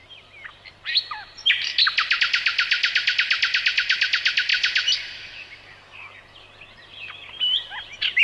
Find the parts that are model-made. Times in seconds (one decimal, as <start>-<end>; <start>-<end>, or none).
none